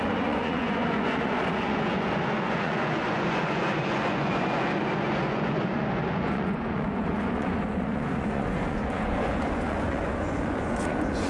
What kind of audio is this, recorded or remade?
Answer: remade